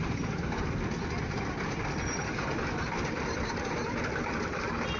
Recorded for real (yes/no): yes